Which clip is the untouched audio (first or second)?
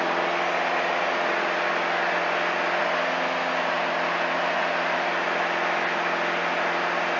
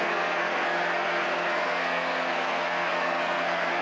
first